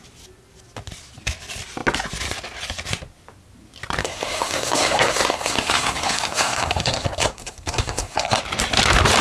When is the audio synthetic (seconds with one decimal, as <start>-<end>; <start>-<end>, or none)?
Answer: 4.0-8.4